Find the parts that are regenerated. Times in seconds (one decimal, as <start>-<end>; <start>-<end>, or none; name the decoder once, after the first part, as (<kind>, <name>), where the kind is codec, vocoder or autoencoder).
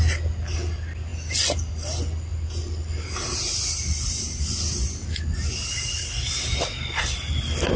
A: none